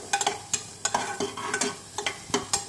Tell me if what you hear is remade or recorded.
recorded